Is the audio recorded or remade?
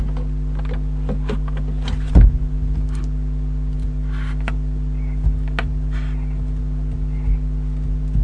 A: recorded